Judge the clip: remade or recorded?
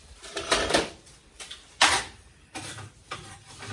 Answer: remade